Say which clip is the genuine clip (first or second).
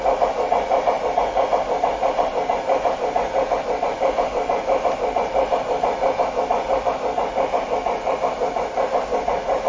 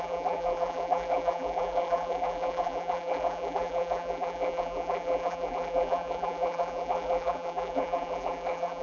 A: first